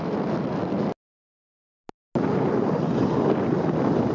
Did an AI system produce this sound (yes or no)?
no